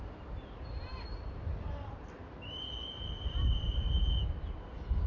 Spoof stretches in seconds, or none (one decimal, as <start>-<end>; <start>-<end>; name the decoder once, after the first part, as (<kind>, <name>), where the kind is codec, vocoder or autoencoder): none